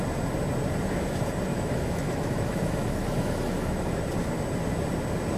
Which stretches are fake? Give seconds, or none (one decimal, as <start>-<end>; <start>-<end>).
1.5-4.0